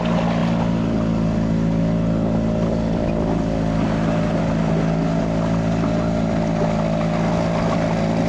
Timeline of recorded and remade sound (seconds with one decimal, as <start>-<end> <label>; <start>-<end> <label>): 0.0-8.3 recorded